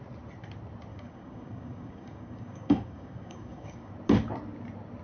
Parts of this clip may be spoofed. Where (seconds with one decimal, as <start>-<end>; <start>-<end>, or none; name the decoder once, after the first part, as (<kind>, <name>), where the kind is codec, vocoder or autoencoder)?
0.9-3.9 (codec, DAC)